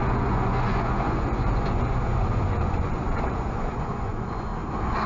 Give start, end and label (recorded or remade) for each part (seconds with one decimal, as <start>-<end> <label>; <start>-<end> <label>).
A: 0.0-4.5 remade; 4.5-5.1 recorded